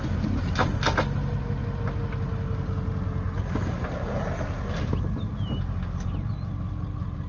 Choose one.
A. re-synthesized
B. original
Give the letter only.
B